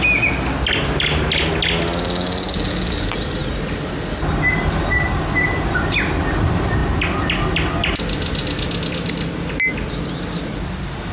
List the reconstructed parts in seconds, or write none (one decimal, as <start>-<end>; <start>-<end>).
none